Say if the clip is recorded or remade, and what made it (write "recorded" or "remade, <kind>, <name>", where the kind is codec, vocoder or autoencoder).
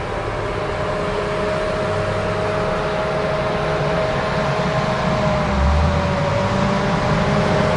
recorded